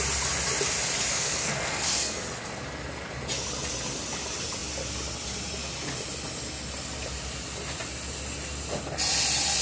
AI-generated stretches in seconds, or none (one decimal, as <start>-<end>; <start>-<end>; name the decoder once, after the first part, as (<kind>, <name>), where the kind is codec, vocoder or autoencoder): 1.1-2.2 (codec, SNAC)